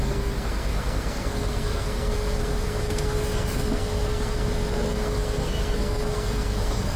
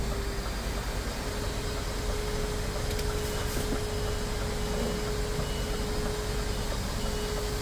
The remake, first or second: first